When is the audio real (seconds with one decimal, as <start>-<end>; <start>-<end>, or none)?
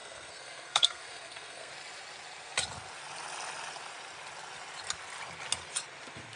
1.7-6.4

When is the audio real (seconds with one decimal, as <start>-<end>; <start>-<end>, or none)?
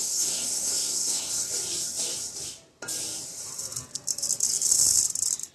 1.5-5.5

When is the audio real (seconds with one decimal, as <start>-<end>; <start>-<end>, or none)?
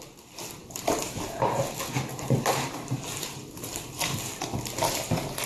0.0-0.6; 1.6-2.1; 3.9-5.5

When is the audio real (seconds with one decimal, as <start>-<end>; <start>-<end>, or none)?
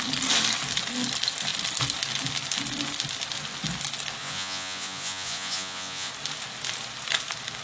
0.0-4.2; 6.1-7.6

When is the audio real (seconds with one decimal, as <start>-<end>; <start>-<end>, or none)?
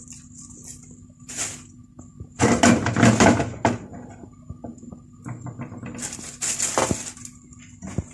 0.0-8.1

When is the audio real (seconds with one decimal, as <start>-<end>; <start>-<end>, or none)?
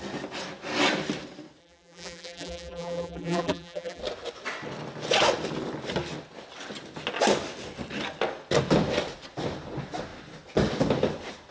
0.0-1.6; 4.0-11.5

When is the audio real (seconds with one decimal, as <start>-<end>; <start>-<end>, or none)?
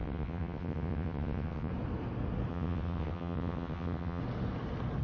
1.7-2.5; 4.2-5.0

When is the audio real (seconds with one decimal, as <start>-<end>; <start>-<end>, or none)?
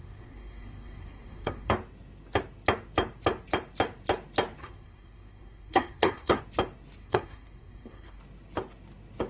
1.7-4.6; 6.4-7.0; 8.2-9.3